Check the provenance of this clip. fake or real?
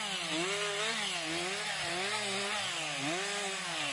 real